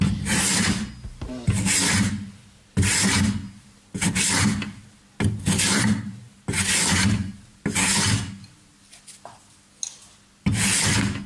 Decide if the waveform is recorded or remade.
recorded